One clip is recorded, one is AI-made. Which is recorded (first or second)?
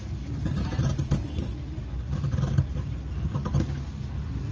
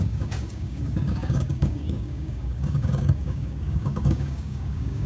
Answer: first